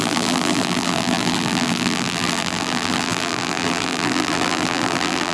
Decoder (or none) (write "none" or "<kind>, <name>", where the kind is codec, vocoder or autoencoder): vocoder, BigVGAN v2